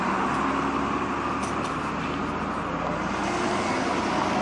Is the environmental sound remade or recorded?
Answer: recorded